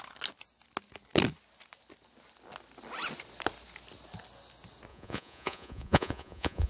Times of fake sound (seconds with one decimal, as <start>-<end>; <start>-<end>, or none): 4.9-6.7